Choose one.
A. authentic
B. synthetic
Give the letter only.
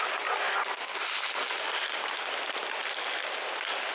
A